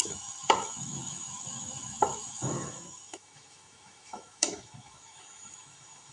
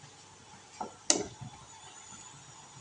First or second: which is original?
second